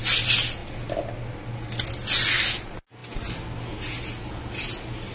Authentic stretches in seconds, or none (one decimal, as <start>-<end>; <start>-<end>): 0.0-5.1